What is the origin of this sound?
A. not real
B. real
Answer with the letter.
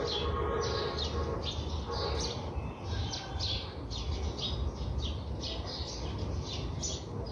B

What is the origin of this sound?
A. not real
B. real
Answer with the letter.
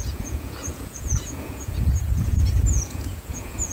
A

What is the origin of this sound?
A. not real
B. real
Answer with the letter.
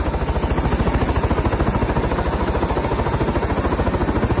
B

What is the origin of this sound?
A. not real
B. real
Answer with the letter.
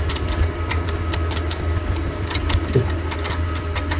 B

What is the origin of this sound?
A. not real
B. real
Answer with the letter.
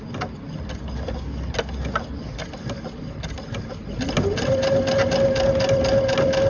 B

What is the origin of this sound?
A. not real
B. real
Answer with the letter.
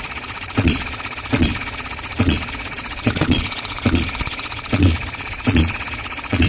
A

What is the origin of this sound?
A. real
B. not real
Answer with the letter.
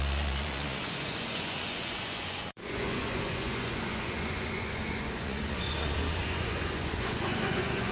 B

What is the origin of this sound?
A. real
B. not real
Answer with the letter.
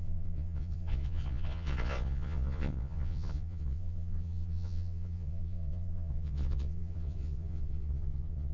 B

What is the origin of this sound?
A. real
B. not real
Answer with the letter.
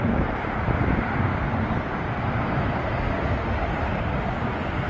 A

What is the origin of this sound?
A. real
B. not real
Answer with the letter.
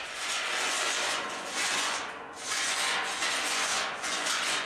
B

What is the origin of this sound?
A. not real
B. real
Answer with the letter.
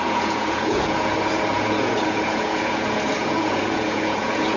A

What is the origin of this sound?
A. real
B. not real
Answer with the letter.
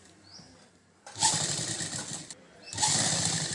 A